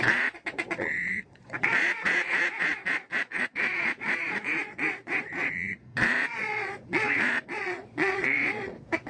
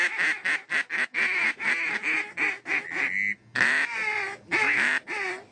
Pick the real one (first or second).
second